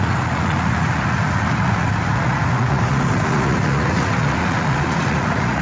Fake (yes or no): yes